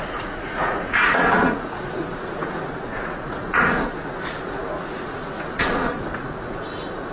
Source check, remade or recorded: remade